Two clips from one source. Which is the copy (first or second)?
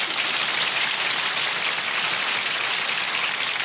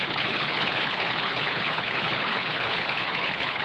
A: second